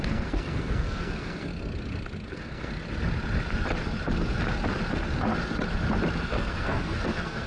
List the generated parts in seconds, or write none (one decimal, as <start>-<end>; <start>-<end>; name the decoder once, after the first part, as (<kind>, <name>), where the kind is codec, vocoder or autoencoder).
0.0-1.5 (codec, SNAC); 2.3-2.7; 6.2-7.5